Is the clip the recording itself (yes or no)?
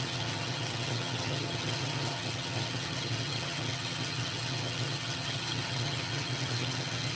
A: no